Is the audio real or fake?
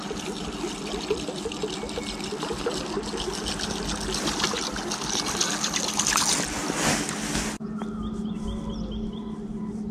real